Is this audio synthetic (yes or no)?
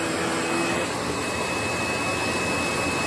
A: no